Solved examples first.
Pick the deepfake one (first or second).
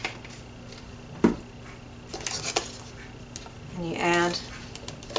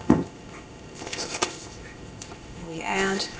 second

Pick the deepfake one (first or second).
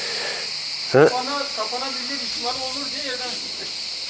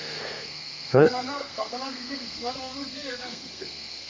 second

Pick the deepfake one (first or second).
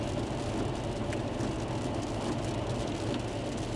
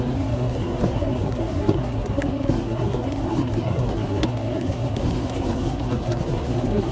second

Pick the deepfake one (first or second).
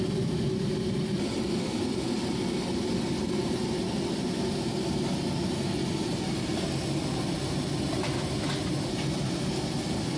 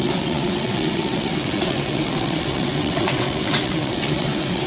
second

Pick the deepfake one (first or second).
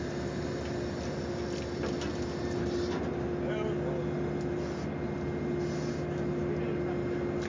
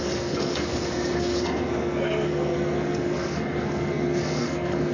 second